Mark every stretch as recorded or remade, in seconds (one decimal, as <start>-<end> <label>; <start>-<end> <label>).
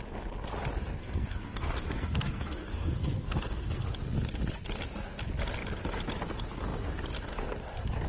0.0-1.0 recorded; 1.0-3.8 remade; 3.8-8.1 recorded